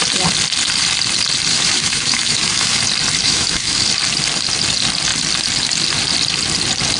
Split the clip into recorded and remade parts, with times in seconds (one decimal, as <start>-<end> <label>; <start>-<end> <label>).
0.0-1.5 recorded; 1.5-2.8 remade; 2.8-3.2 recorded; 3.2-3.9 remade; 3.9-7.0 recorded